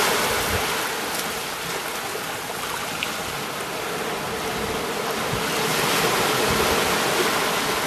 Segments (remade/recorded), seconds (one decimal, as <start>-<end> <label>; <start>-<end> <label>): 0.0-7.9 recorded